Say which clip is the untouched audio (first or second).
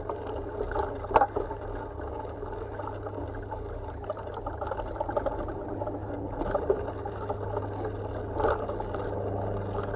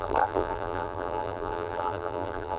first